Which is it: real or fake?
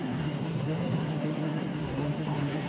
fake